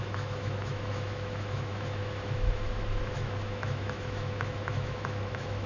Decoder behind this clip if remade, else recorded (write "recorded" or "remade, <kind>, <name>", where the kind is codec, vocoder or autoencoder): remade, autoencoder, DAC-VAE